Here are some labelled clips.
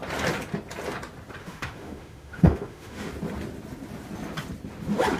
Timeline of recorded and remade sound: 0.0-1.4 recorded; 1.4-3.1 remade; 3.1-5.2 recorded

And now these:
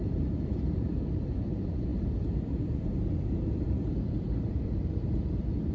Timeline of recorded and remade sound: 0.0-5.7 remade

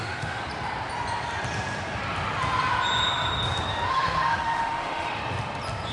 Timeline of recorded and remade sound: 0.0-0.4 remade; 0.4-3.9 recorded; 3.9-5.2 remade; 5.2-5.9 recorded

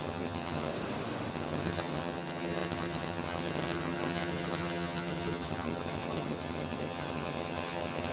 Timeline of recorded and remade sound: 0.0-0.7 remade; 0.7-1.3 recorded; 1.3-8.1 remade

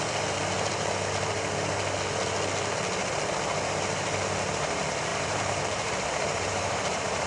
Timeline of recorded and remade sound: 0.0-5.1 recorded; 5.1-7.3 remade

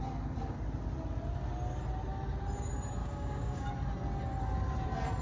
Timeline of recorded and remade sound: 0.0-3.0 recorded; 3.0-3.7 remade; 3.7-5.2 recorded

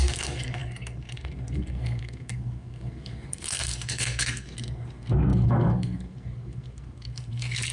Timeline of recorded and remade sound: 0.0-7.7 remade